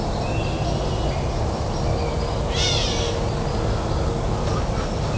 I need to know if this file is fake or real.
real